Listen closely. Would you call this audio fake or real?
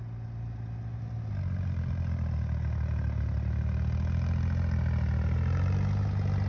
real